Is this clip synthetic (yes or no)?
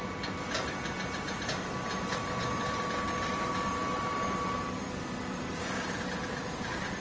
no